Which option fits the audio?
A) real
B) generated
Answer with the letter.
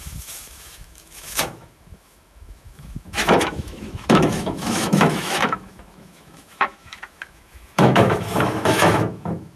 B